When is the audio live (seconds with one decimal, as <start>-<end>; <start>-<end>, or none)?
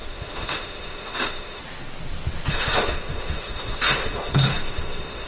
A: 1.6-2.5